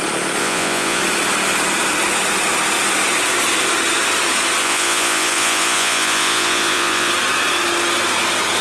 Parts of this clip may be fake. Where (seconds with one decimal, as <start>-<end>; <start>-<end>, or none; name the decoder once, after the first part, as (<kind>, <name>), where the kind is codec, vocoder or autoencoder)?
0.4-1.0 (vocoder, Vocos); 4.6-7.1